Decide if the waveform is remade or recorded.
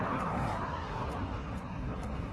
remade